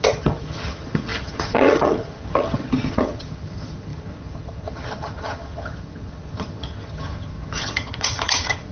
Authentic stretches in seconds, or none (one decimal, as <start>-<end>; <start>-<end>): none